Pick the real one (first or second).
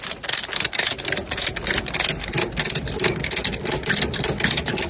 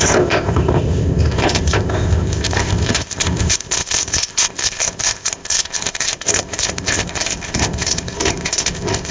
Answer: first